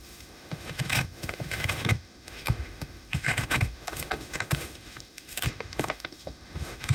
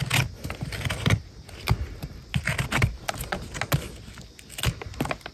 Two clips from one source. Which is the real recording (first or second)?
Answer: second